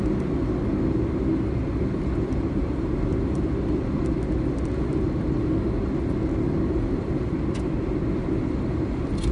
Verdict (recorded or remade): recorded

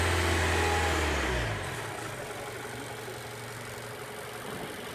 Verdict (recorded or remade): recorded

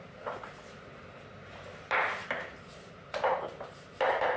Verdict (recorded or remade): remade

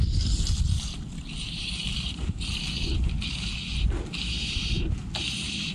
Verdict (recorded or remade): recorded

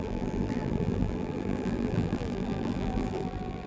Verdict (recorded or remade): remade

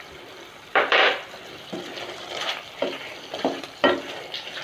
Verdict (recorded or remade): remade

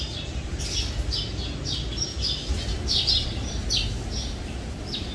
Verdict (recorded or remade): recorded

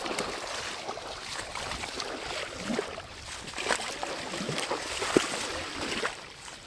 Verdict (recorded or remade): recorded